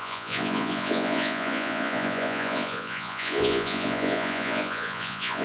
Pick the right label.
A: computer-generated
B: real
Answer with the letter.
A